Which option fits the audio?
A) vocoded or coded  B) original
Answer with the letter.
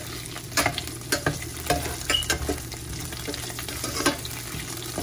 B